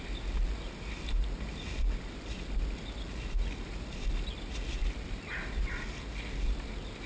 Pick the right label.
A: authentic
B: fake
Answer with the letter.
A